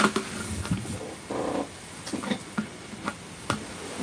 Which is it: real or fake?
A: real